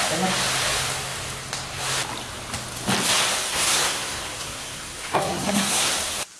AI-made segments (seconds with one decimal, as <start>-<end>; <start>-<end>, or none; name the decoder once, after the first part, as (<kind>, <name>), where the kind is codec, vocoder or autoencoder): 3.5-5.9 (codec, SNAC)